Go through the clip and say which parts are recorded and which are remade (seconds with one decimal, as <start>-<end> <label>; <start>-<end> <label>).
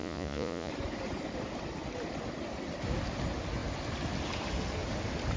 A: 0.0-0.7 remade; 0.7-5.4 recorded